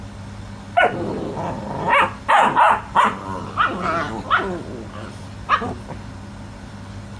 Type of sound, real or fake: real